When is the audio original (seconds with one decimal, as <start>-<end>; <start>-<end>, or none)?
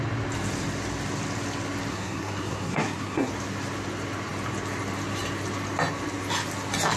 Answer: 0.0-1.9; 3.3-7.0